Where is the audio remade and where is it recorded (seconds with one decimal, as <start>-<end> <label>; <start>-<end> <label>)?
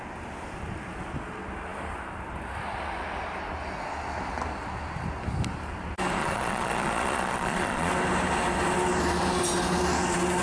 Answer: 0.0-6.2 recorded; 6.2-7.9 remade; 7.9-10.4 recorded